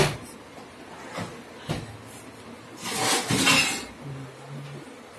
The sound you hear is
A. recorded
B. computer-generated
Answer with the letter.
A